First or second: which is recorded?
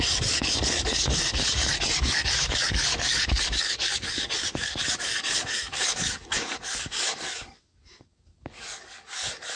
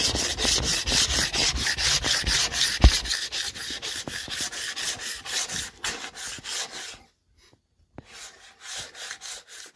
second